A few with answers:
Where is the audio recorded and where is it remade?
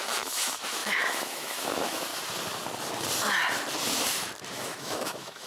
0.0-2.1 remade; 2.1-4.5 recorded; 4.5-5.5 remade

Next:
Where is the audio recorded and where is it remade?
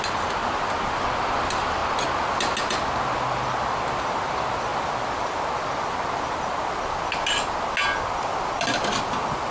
0.0-9.5 recorded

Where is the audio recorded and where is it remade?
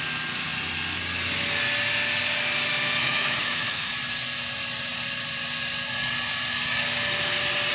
0.0-3.0 recorded; 3.0-3.9 remade; 3.9-7.7 recorded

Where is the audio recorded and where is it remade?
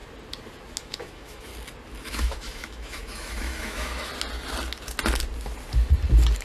0.0-0.8 recorded; 0.8-1.5 remade; 1.5-2.0 recorded; 2.0-4.1 remade; 4.1-6.4 recorded